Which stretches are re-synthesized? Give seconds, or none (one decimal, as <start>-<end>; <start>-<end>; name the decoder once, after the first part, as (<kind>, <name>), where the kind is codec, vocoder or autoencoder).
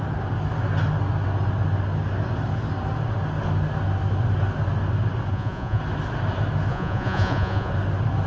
5.3-5.8 (vocoder, Vocos); 6.7-7.7